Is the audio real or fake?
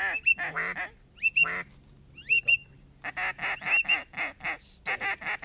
real